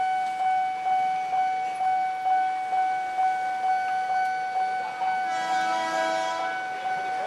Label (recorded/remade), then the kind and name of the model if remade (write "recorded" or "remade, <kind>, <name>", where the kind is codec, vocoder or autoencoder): recorded